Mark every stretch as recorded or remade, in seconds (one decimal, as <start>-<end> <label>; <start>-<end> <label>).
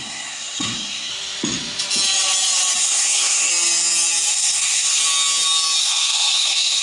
0.0-1.1 remade; 1.1-2.8 recorded; 2.8-3.5 remade; 3.5-4.3 recorded; 4.3-5.0 remade; 5.0-5.8 recorded; 5.8-6.8 remade